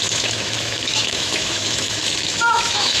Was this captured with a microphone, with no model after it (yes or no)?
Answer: no